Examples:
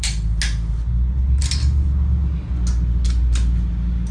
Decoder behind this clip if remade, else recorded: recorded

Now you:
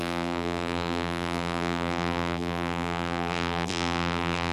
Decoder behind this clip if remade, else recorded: remade, vocoder, BigVGAN v2